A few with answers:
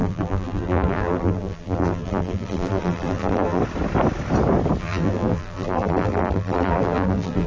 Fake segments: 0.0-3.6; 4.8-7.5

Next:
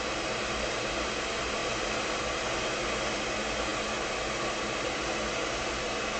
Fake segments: none

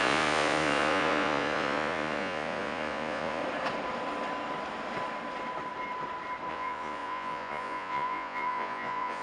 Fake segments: 0.0-3.4; 6.5-9.2

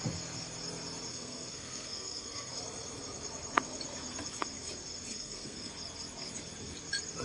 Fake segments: 1.1-2.5; 5.1-5.7

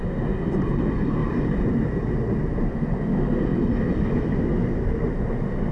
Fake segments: 1.2-2.0